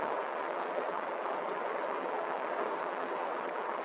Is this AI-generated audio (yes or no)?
yes